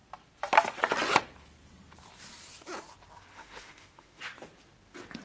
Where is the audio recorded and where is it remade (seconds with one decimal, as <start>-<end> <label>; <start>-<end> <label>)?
0.0-3.3 recorded; 3.3-4.2 remade; 4.2-5.2 recorded